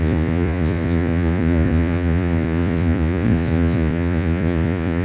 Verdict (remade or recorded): remade